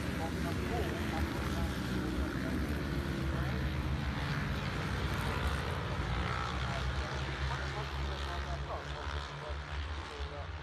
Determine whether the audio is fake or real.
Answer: real